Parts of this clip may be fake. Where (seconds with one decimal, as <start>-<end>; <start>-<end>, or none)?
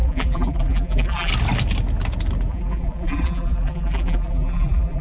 0.0-1.3; 2.5-5.0